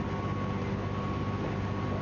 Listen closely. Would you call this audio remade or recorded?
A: recorded